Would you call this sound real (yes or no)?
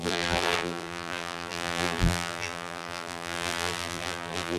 no